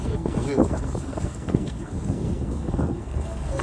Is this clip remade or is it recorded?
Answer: remade